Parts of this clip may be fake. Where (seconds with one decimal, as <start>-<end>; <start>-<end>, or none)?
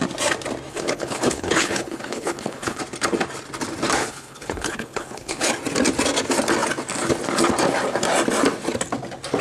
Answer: 0.7-2.8; 4.0-5.5